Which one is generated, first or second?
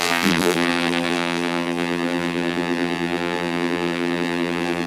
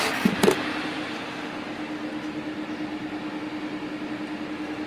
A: first